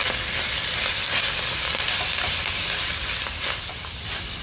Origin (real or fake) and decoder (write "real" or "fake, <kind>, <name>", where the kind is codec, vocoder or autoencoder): real